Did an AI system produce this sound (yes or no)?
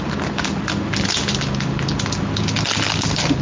no